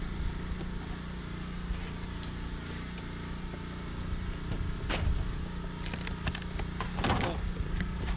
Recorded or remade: recorded